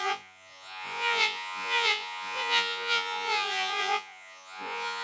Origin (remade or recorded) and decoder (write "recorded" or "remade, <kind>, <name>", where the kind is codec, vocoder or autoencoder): remade, vocoder, Vocos